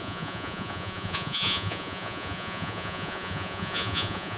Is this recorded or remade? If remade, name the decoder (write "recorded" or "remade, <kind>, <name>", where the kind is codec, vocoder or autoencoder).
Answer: remade, vocoder, Vocos